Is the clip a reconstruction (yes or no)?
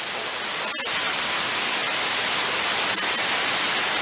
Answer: no